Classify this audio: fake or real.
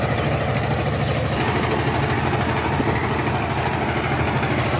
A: real